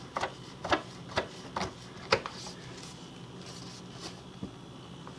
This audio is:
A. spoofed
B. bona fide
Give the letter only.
B